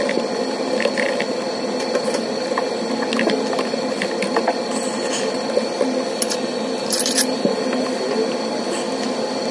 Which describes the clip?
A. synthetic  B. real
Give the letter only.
B